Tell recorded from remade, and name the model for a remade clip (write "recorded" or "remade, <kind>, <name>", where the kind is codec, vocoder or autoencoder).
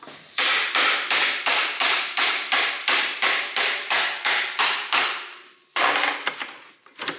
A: recorded